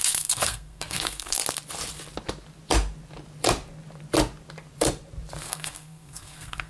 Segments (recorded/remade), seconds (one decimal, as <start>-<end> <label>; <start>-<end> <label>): 0.0-1.4 remade; 1.4-5.4 recorded; 5.4-6.7 remade